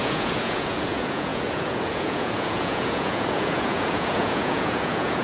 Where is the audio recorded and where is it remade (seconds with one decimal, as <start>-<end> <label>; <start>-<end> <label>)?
0.0-5.2 remade